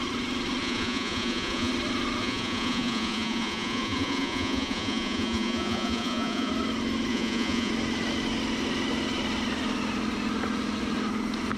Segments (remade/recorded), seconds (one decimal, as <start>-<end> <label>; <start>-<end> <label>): 0.0-0.6 recorded; 0.6-1.7 remade; 1.7-2.2 recorded; 2.2-6.5 remade; 6.5-7.1 recorded; 7.1-7.7 remade; 7.7-11.6 recorded